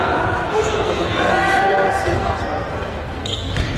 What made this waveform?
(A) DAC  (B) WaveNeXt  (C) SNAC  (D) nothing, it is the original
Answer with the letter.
C